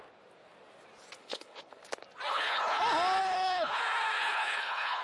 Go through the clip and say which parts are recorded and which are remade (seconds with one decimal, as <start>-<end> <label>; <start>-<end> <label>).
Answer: 0.0-1.2 recorded; 1.2-1.8 remade; 1.8-2.3 recorded; 2.3-2.8 remade; 2.8-3.2 recorded; 3.2-3.8 remade; 3.8-4.2 recorded; 4.2-5.0 remade